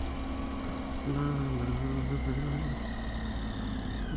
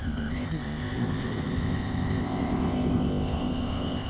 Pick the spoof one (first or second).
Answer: second